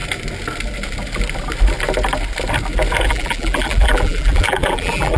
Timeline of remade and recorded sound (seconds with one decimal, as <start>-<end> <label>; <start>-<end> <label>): 0.0-3.1 recorded; 3.1-5.2 remade